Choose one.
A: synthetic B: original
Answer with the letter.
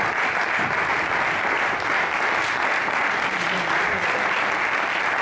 B